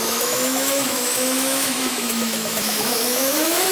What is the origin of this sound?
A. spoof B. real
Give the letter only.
A